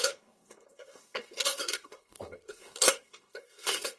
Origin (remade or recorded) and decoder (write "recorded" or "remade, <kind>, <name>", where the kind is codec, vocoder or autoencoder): remade, codec, SNAC